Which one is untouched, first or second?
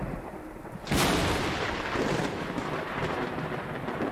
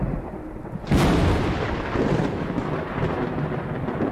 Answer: second